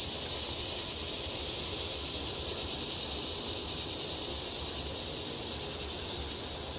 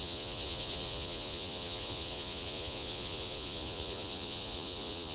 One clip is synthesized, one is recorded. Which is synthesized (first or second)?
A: second